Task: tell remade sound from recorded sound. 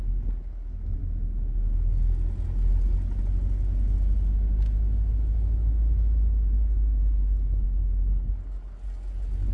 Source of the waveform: recorded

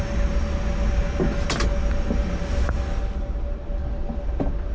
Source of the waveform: recorded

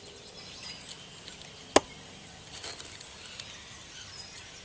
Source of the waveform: recorded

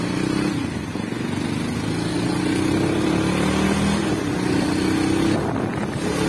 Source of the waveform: recorded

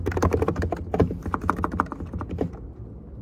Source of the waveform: recorded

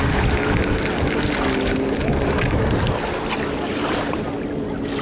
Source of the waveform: recorded